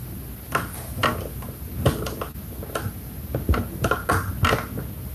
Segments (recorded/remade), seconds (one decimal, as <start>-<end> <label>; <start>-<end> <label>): 0.0-5.1 recorded